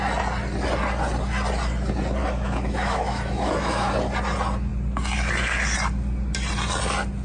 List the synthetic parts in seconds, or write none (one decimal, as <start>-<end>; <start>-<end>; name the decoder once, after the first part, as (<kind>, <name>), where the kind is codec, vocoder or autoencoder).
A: 2.2-3.9 (autoencoder, DAC-VAE)